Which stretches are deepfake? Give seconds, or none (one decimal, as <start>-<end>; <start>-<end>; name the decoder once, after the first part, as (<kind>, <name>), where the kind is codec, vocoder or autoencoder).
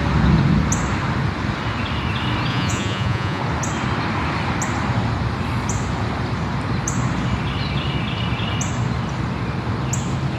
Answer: 2.5-3.4 (vocoder, Vocos)